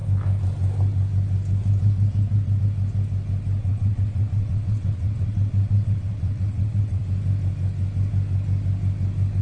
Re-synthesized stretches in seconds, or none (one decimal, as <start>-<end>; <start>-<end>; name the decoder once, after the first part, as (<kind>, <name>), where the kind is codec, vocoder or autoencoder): 3.6-7.0 (vocoder, WaveNeXt)